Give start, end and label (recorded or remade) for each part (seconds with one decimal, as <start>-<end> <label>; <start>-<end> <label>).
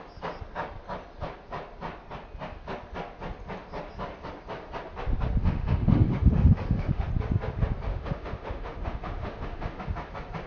0.0-5.4 recorded; 5.4-7.1 remade; 7.1-7.9 recorded; 7.9-9.8 remade; 9.8-10.5 recorded